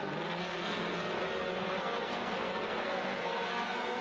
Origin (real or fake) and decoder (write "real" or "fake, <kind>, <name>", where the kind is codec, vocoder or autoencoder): fake, codec, SNAC